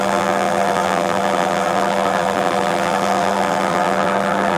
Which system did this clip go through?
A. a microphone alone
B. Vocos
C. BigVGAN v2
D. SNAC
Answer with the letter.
C